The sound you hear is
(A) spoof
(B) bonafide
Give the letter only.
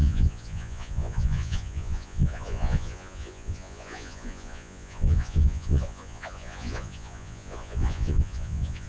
A